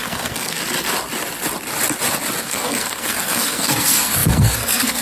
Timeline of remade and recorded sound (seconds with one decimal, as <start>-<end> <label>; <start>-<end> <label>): 0.0-0.6 remade; 0.6-2.4 recorded; 2.4-5.0 remade

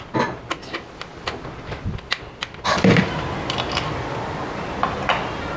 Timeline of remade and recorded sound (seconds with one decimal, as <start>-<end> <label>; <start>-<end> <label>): 0.0-5.6 recorded

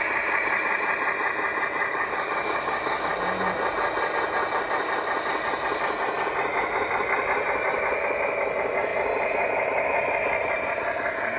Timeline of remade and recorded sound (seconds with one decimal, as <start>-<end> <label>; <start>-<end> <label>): 0.0-1.9 recorded; 1.9-3.1 remade; 3.1-11.4 recorded

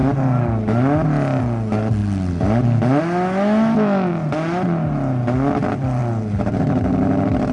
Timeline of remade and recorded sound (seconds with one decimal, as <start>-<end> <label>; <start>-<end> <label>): 0.0-7.5 recorded

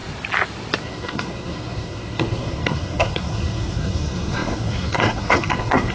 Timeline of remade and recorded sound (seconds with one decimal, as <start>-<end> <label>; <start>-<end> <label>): 0.0-0.8 recorded; 0.8-5.9 remade

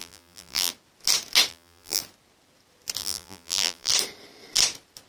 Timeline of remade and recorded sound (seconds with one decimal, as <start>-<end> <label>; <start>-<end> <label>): 0.0-0.7 remade; 0.7-1.5 recorded; 1.5-2.0 remade; 2.0-3.0 recorded; 3.0-3.9 remade; 3.9-5.1 recorded